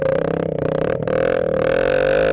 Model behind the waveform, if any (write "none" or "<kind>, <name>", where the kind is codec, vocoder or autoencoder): none